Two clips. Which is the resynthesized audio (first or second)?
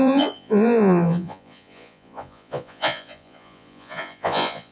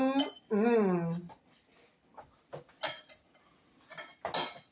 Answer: first